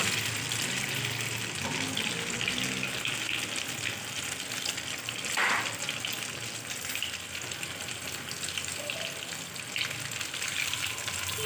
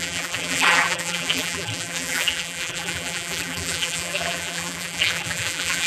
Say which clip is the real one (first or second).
first